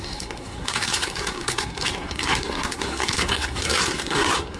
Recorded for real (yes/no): no